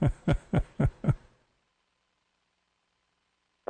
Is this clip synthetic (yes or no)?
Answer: no